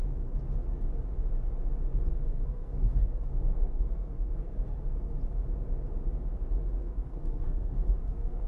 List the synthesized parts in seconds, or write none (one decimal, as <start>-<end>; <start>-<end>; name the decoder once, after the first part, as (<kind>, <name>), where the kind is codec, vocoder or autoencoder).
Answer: 2.1-5.1 (codec, SNAC); 6.8-8.5

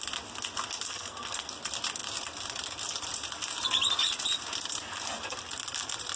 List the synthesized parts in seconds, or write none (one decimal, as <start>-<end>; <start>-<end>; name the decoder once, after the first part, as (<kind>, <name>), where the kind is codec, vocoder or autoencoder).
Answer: 0.9-1.5 (codec, SNAC)

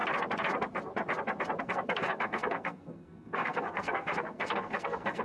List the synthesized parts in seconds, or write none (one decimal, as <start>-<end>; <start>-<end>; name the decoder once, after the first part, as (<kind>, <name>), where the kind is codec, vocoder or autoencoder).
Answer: 1.6-5.2 (codec, SNAC)

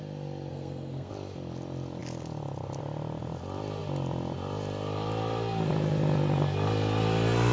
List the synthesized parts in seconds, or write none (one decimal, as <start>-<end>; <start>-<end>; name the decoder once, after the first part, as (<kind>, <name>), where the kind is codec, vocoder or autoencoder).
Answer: 0.5-1.1 (codec, SNAC)

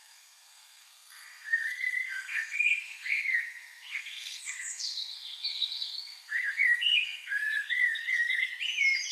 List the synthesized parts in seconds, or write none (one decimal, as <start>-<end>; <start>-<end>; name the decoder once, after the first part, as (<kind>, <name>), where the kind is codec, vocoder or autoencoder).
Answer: 0.0-8.5 (codec, SNAC)

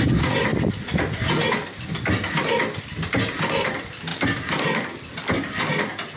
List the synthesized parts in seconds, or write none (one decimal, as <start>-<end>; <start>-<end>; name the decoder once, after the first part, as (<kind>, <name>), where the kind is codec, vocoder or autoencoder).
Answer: none

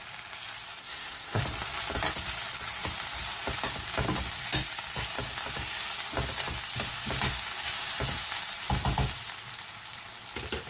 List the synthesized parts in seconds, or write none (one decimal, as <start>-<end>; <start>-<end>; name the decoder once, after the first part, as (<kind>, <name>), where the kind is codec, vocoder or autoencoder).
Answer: 0.8-1.4 (codec, SNAC)

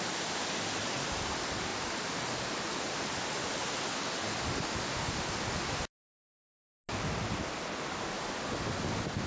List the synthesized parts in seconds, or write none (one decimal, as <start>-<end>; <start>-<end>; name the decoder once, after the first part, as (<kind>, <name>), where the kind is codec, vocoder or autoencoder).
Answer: none